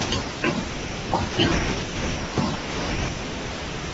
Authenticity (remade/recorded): recorded